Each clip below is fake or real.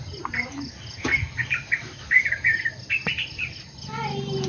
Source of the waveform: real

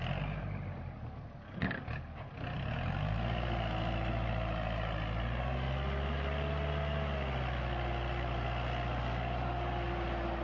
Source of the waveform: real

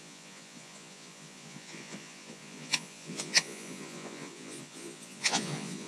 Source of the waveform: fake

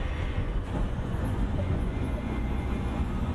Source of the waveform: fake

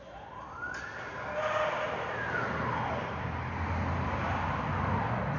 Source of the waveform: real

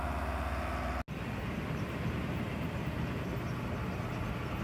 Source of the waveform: real